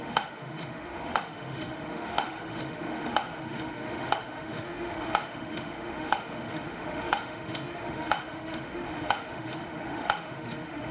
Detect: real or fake fake